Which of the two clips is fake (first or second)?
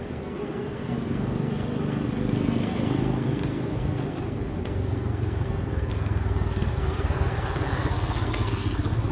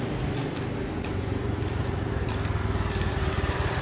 first